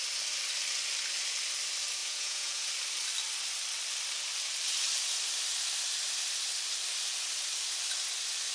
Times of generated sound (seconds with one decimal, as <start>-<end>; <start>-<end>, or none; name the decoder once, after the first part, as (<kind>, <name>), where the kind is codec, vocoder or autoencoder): 2.0-2.7 (vocoder, Vocos)